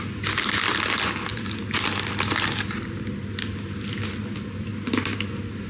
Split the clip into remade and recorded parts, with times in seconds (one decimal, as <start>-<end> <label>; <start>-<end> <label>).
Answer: 0.0-5.7 recorded

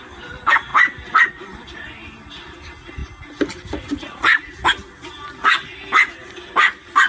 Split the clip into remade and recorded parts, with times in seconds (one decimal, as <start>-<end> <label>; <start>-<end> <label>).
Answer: 0.0-7.1 recorded

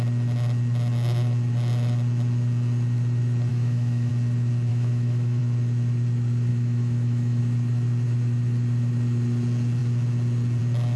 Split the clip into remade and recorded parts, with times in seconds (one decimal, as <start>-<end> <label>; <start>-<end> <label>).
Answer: 0.0-3.5 recorded; 3.5-4.1 remade; 4.1-4.7 recorded; 4.7-5.4 remade; 5.4-6.5 recorded; 6.5-7.4 remade; 7.4-11.0 recorded

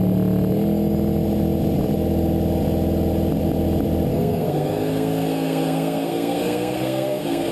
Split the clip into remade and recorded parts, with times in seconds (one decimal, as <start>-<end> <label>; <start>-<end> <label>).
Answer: 0.0-4.1 recorded; 4.1-7.5 remade

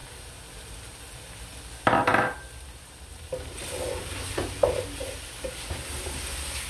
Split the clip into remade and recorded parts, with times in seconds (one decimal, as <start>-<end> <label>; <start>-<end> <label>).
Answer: 0.0-6.7 recorded

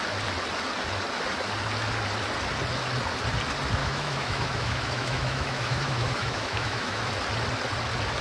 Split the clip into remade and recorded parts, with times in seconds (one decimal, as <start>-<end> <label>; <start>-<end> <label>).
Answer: 0.0-3.8 recorded; 3.8-7.1 remade; 7.1-8.2 recorded

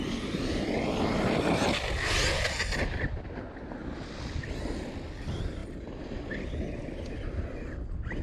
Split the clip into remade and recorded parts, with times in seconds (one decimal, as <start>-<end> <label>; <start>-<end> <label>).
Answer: 0.0-3.8 recorded; 3.8-4.6 remade; 4.6-5.6 recorded; 5.6-6.2 remade; 6.2-8.2 recorded

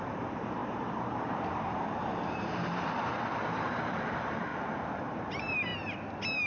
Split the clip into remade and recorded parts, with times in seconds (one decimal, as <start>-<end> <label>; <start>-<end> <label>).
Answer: 0.0-4.5 remade; 4.5-5.0 recorded; 5.0-5.7 remade; 5.7-6.5 recorded